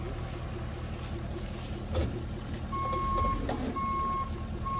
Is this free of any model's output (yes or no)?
yes